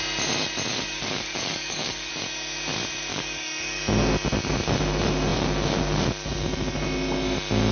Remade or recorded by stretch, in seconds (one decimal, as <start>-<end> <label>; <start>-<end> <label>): 0.0-0.7 recorded; 0.7-2.1 remade; 2.1-3.1 recorded; 3.1-3.8 remade; 3.8-7.7 recorded